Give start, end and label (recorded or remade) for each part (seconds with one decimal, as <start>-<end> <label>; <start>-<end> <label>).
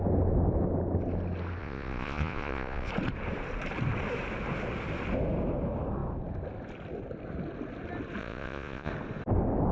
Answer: 0.0-1.6 recorded; 1.6-2.9 remade; 2.9-8.2 recorded; 8.2-8.9 remade; 8.9-9.7 recorded